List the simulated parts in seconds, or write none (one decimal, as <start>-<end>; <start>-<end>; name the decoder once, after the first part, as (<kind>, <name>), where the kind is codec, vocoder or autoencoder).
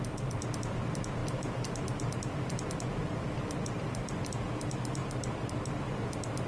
1.2-4.3 (vocoder, BigVGAN v2)